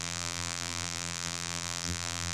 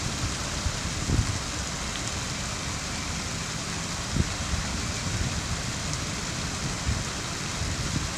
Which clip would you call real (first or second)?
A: second